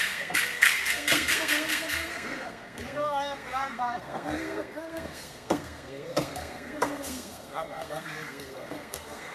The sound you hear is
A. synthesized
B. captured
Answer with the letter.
A